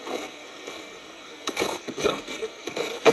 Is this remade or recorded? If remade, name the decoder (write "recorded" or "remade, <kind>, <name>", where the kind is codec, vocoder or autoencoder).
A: remade, codec, SNAC